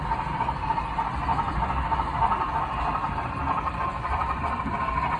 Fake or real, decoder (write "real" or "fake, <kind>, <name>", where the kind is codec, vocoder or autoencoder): real